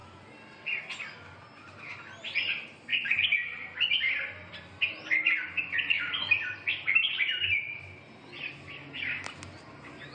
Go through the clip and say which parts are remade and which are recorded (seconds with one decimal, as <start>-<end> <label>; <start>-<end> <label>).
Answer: 0.0-10.1 recorded